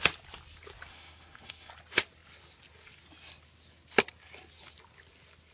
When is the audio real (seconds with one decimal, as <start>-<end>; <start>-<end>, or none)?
0.0-0.9; 1.7-5.5